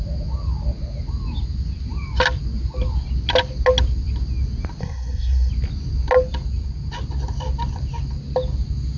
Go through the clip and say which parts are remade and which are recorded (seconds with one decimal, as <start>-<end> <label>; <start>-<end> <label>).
0.0-4.8 recorded; 4.8-5.5 remade; 5.5-9.0 recorded